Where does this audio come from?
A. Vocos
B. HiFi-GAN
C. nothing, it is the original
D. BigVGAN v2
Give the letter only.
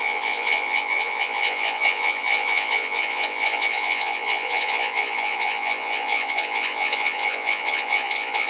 A